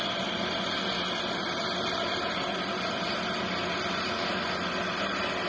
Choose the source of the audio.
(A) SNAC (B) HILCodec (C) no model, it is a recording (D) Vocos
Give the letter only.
C